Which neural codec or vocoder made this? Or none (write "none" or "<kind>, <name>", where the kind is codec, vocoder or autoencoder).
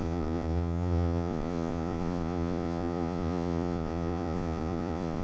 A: vocoder, Vocos